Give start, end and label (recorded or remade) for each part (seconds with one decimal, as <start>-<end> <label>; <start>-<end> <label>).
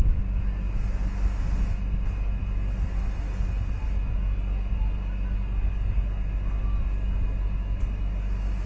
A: 0.0-8.7 recorded